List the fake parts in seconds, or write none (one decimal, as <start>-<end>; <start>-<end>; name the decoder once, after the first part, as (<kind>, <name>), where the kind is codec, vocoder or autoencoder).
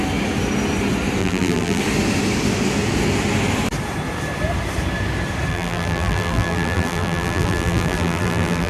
1.2-1.8 (vocoder, BigVGAN v2); 5.5-8.7